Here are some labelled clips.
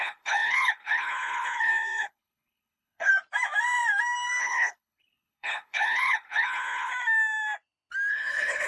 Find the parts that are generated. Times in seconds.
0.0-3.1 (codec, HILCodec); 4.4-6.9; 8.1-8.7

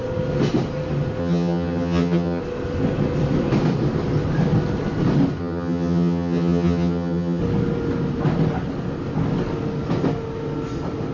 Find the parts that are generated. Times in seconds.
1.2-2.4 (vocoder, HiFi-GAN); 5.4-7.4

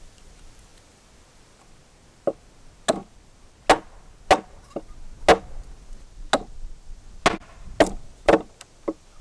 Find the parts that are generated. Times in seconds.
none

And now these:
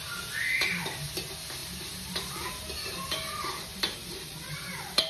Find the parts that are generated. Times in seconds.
3.7-5.1 (vocoder, BigVGAN v2)

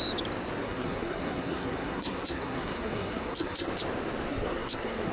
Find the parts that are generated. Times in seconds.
0.6-3.7 (codec, SNAC); 4.3-5.1

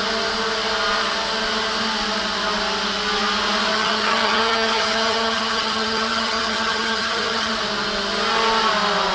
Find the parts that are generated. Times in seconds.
3.7-7.5 (vocoder, HiFi-GAN)

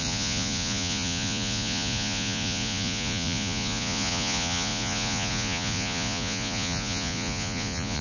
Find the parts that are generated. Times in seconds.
0.0-8.0 (vocoder, Vocos)

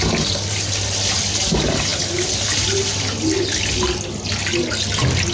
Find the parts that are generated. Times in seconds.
none